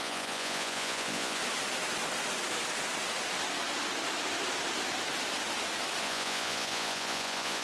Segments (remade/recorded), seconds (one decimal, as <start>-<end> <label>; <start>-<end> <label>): 0.0-1.4 remade; 1.4-6.0 recorded; 6.0-7.6 remade